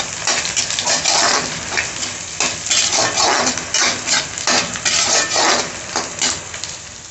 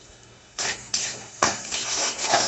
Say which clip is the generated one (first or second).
second